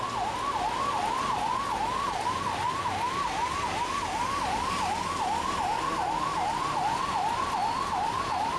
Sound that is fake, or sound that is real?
real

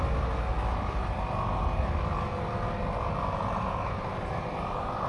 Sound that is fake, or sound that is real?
real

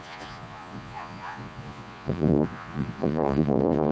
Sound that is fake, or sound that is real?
fake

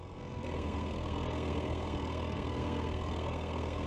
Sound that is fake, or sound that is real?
fake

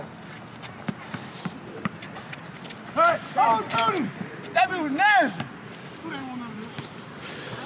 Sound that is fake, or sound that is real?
real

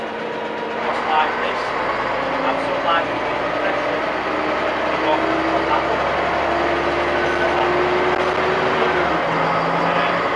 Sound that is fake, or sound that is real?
real